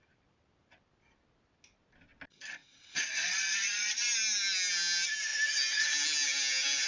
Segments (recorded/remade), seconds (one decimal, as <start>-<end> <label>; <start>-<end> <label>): 0.0-2.6 recorded; 2.6-4.0 remade; 4.0-6.9 recorded